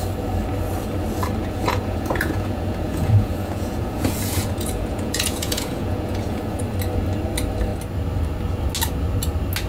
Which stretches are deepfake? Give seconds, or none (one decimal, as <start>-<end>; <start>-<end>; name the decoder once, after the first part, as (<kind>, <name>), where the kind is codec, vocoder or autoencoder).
1.4-6.6 (vocoder, Vocos)